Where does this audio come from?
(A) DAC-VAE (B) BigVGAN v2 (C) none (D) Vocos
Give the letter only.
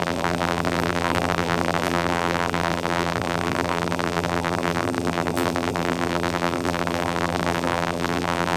B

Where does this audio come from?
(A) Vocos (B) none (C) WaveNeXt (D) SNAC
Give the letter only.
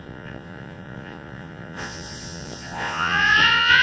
A